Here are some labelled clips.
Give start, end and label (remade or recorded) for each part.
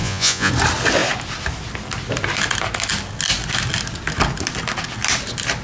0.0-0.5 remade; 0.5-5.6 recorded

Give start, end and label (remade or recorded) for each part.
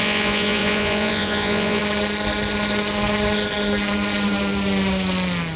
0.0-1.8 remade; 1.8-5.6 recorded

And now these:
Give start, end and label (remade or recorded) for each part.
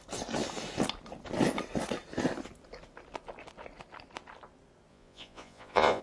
0.0-4.9 recorded; 4.9-6.0 remade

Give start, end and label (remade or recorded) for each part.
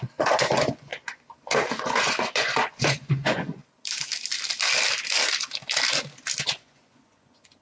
0.0-0.9 remade; 0.9-2.0 recorded; 2.0-3.6 remade; 3.6-6.4 recorded; 6.4-7.6 remade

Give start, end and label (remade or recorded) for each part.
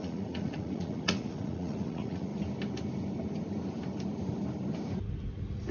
0.0-2.3 remade; 2.3-5.7 recorded